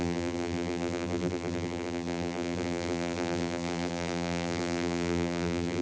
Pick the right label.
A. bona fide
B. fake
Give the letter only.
B